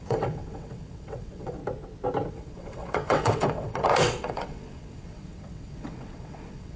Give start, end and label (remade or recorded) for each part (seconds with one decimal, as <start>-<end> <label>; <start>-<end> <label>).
0.0-1.6 remade; 1.6-2.3 recorded; 2.3-6.8 remade

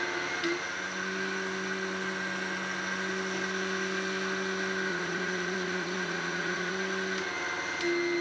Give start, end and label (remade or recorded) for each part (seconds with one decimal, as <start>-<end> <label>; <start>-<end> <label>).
0.0-4.9 recorded; 4.9-6.7 remade; 6.7-8.2 recorded

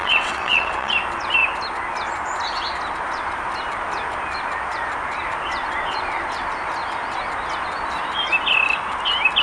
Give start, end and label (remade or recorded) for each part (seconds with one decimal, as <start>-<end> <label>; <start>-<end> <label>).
0.0-0.9 remade; 0.9-9.4 recorded

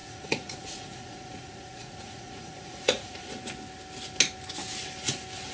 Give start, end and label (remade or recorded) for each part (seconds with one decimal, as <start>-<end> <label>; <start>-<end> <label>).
0.0-3.3 remade; 3.3-5.5 recorded

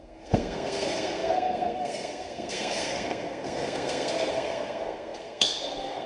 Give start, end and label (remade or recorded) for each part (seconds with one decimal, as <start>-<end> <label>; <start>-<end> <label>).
0.0-6.1 remade

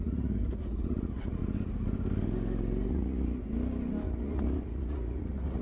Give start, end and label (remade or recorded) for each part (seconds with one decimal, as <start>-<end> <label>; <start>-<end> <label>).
0.0-1.4 remade; 1.4-2.9 recorded; 2.9-3.4 remade; 3.4-4.1 recorded; 4.1-5.6 remade

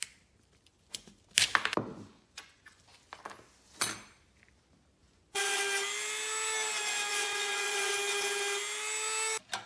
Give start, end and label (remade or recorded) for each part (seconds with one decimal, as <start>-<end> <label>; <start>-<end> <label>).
0.0-0.7 recorded; 0.7-1.2 remade; 1.2-1.9 recorded; 1.9-2.8 remade; 2.8-5.0 recorded; 5.0-5.6 remade; 5.6-7.1 recorded; 7.1-7.9 remade; 7.9-9.7 recorded